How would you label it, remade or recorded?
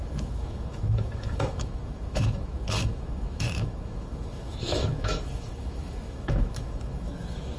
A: remade